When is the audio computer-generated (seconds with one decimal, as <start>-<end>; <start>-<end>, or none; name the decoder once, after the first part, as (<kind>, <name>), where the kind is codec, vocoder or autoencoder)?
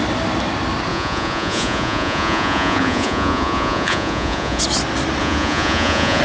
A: 0.9-4.6 (vocoder, Vocos); 5.2-6.2